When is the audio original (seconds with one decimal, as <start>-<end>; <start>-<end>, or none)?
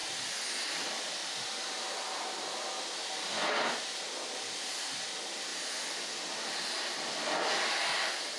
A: 0.0-8.4